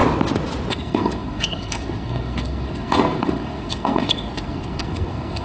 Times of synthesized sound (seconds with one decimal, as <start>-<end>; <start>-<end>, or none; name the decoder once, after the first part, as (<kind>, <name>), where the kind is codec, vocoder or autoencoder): 0.7-5.4 (codec, SNAC)